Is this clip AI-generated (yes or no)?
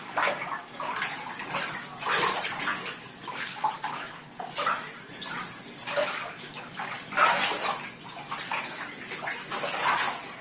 no